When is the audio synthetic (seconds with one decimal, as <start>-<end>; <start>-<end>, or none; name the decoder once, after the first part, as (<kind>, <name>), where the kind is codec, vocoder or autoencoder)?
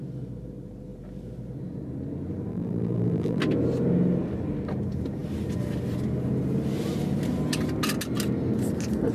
2.5-3.4 (vocoder, BigVGAN v2)